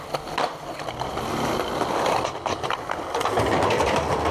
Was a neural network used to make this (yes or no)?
yes